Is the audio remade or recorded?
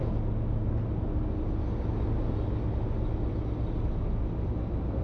recorded